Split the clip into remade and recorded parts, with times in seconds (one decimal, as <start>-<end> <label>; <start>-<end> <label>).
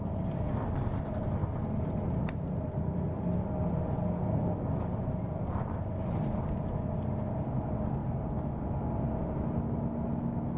0.0-10.6 recorded